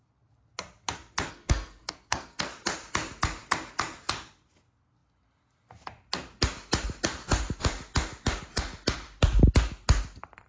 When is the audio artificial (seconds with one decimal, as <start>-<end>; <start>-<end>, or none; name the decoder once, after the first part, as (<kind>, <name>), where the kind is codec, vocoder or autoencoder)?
1.3-2.5 (codec, SNAC)